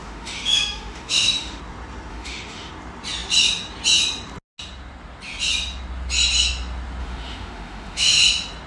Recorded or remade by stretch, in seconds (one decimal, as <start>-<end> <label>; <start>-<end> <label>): 0.0-1.6 remade; 1.6-2.1 recorded; 2.1-2.7 remade; 2.7-7.0 recorded; 7.0-8.2 remade; 8.2-8.7 recorded